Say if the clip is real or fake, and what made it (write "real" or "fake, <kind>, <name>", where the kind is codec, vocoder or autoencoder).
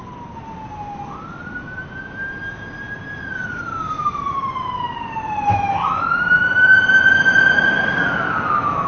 real